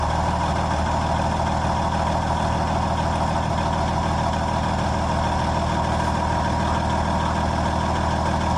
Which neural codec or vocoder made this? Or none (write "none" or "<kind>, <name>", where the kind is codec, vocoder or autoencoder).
none